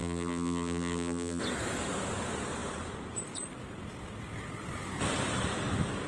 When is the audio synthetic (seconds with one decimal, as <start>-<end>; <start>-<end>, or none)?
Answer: 0.0-1.4